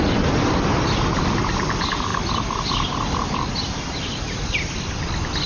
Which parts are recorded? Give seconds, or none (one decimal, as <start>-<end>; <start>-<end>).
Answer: 0.0-5.5